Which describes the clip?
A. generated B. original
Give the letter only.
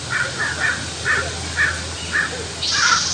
B